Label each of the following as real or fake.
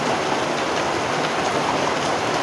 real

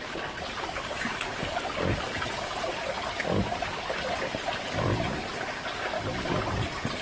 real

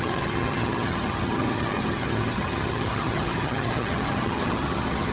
fake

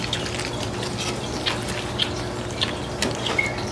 real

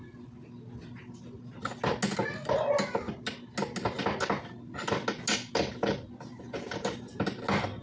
real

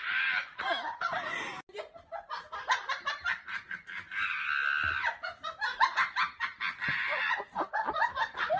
real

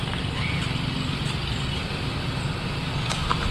real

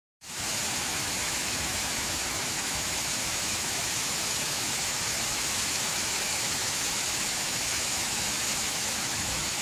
fake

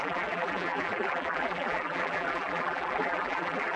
fake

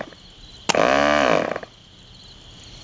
real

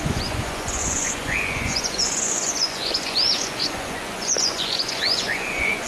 fake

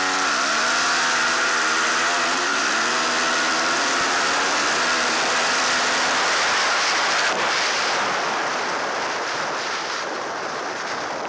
fake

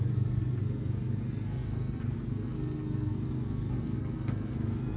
fake